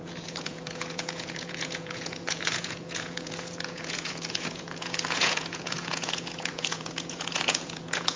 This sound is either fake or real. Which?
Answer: fake